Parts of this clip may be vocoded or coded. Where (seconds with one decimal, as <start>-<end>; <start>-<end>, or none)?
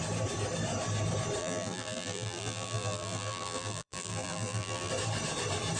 1.4-4.9